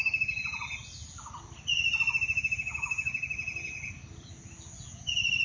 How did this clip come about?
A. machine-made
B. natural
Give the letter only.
B